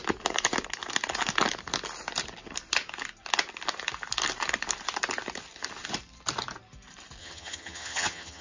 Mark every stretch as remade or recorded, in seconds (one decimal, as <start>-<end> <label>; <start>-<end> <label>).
0.0-7.2 recorded; 7.2-8.4 remade